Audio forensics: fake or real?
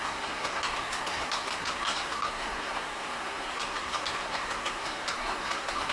fake